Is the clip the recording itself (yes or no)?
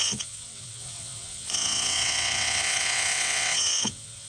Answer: no